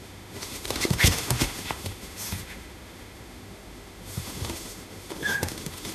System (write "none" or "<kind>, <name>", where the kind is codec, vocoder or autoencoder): autoencoder, DAC-VAE